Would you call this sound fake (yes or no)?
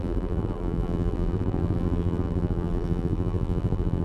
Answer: yes